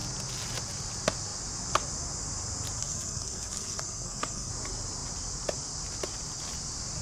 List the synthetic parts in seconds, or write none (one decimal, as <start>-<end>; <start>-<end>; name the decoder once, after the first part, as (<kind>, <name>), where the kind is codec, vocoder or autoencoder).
2.8-4.5 (codec, SNAC)